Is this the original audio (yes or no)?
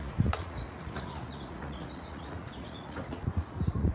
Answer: no